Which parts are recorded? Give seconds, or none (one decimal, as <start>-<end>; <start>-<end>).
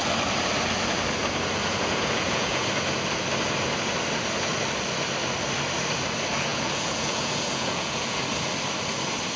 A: 0.0-1.6; 2.6-6.5; 8.2-9.4